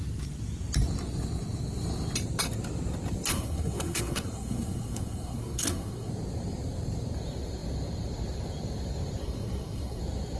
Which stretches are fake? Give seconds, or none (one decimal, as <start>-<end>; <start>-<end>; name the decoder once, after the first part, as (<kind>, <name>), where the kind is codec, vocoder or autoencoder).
3.3-6.1 (codec, SNAC); 9.2-10.0